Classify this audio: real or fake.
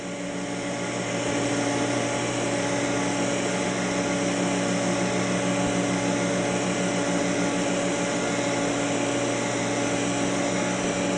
real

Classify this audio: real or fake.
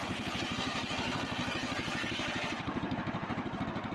real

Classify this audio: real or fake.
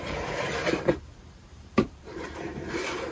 fake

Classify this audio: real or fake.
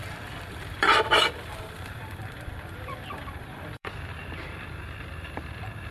fake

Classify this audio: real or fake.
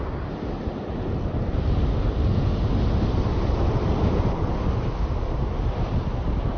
real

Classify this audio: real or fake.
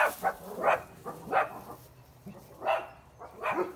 real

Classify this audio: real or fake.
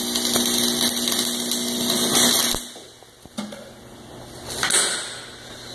real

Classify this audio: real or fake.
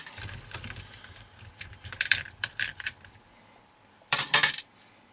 fake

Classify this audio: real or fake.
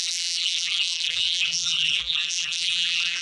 fake